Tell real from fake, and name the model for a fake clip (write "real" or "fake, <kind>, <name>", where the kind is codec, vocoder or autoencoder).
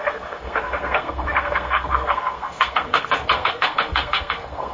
fake, codec, SNAC